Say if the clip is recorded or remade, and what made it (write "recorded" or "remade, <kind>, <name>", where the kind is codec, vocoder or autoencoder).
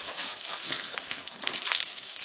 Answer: remade, codec, SNAC